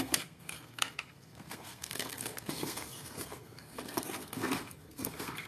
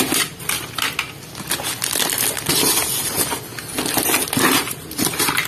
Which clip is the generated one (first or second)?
first